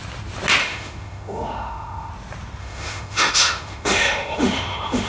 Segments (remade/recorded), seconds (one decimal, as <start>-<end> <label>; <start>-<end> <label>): 0.0-0.6 recorded; 0.6-2.1 remade; 2.1-2.6 recorded; 2.6-5.1 remade